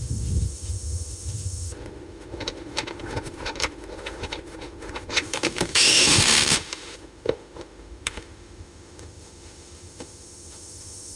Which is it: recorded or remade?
remade